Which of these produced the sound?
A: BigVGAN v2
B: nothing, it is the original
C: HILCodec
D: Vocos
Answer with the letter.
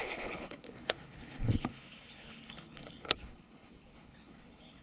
C